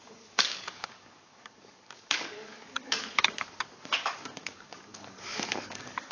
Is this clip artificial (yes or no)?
yes